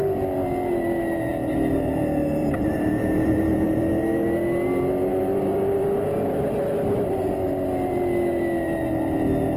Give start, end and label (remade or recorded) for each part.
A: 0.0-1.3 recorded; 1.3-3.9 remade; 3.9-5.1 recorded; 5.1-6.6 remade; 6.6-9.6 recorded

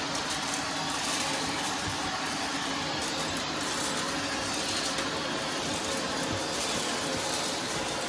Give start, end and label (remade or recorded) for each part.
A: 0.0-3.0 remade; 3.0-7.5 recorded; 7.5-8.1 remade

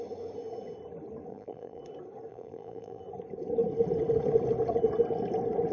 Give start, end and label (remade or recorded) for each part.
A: 0.0-1.3 recorded; 1.3-1.8 remade; 1.8-2.3 recorded; 2.3-3.0 remade; 3.0-5.7 recorded